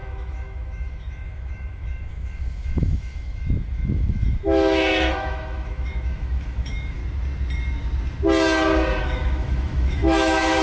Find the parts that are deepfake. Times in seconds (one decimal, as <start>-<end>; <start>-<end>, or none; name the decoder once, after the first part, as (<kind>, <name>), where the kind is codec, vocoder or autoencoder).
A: 0.0-7.0 (autoencoder, DAC-VAE); 9.0-10.6